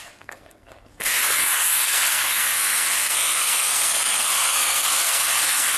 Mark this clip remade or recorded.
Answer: remade